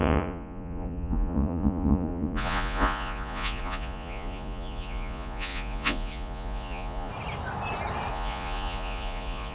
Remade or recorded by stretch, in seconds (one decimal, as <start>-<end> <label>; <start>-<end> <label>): 0.0-7.1 remade; 7.1-8.1 recorded; 8.1-9.5 remade